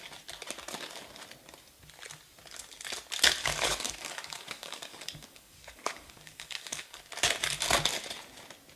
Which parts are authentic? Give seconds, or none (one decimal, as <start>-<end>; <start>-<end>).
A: 0.0-3.4; 7.1-8.8